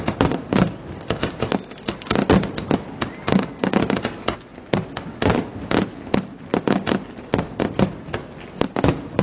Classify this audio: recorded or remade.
recorded